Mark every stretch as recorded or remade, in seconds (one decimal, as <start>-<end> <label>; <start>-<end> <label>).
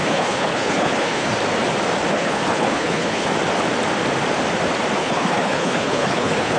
0.0-1.3 remade; 1.3-2.1 recorded; 2.1-3.3 remade; 3.3-5.0 recorded; 5.0-6.6 remade